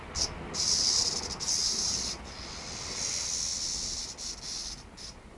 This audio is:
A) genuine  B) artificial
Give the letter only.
A